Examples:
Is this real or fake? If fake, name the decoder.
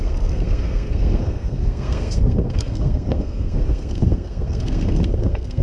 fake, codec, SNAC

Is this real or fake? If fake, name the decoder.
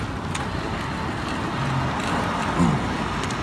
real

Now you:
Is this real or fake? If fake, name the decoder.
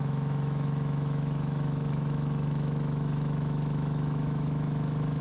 fake, autoencoder, DAC-VAE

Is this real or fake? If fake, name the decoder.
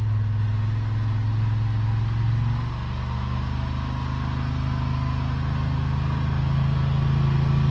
real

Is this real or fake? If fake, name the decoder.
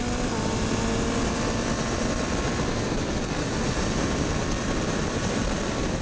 real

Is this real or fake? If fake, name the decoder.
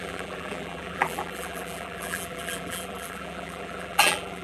fake, vocoder, BigVGAN v2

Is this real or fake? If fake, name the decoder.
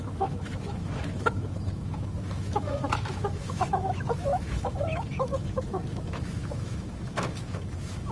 fake, autoencoder, DAC-VAE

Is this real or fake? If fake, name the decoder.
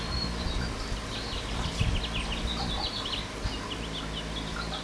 real